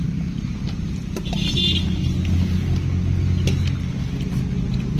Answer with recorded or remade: recorded